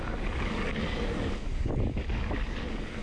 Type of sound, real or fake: fake